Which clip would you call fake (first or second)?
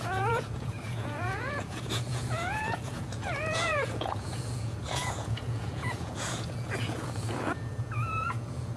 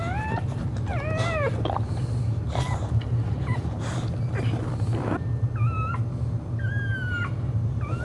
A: first